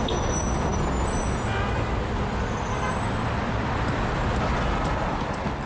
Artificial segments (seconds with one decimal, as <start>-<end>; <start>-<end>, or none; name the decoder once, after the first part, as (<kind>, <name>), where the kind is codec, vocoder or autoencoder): none

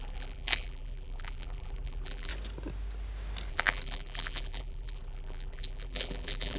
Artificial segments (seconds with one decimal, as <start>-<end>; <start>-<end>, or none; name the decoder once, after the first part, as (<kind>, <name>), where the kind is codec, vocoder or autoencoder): 0.0-2.3 (vocoder, BigVGAN v2); 3.5-6.6

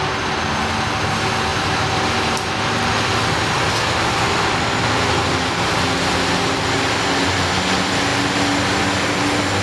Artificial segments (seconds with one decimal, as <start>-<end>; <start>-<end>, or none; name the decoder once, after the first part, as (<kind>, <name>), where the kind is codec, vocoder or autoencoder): 1.5-3.7 (vocoder, BigVGAN v2)

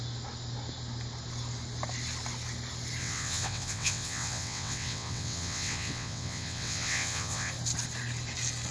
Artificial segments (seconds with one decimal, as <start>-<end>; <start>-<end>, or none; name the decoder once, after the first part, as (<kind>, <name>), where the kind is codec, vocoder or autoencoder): 3.0-7.5 (vocoder, WaveNeXt)

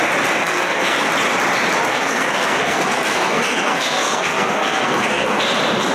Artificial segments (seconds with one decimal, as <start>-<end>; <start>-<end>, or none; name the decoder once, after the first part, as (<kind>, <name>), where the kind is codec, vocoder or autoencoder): 0.4-1.1 (codec, SNAC); 1.9-5.4

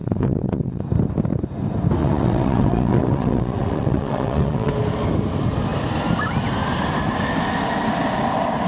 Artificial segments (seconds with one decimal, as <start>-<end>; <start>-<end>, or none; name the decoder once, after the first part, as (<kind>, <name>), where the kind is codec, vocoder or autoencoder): 0.0-0.8 (vocoder, WaveNeXt); 2.0-4.7